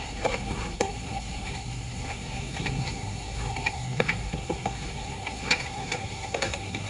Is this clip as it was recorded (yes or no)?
no